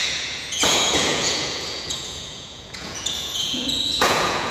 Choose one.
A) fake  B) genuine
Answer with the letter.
A